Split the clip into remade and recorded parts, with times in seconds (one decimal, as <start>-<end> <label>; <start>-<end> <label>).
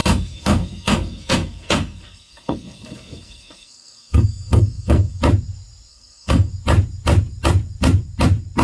0.0-5.2 remade; 5.2-5.9 recorded; 5.9-6.5 remade; 6.5-8.6 recorded